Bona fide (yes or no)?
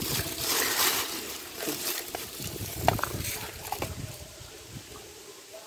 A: no